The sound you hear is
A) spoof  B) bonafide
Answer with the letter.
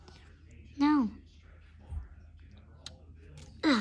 B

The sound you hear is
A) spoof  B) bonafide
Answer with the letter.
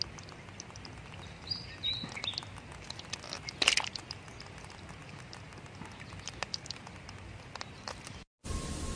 B